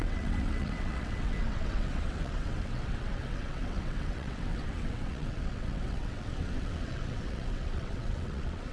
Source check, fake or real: fake